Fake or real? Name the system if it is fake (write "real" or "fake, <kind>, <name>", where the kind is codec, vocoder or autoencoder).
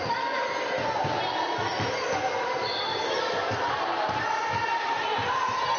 real